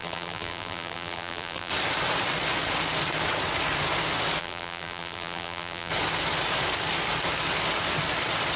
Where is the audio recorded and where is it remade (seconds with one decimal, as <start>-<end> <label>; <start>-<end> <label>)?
0.0-1.7 remade; 1.7-4.4 recorded; 4.4-5.9 remade; 5.9-8.6 recorded